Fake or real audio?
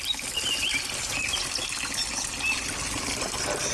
real